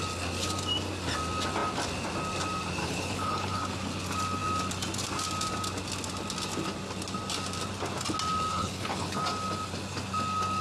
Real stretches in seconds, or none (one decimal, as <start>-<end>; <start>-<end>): 0.0-2.8; 3.6-8.5; 9.2-10.6